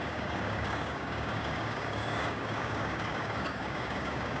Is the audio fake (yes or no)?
yes